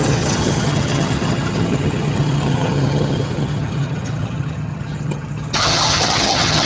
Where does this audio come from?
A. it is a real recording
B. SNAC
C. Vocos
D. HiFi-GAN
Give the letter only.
D